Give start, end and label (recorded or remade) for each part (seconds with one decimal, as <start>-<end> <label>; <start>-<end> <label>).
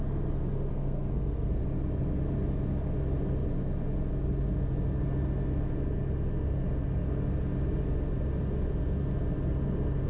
0.0-0.7 recorded; 0.7-1.6 remade; 1.6-10.1 recorded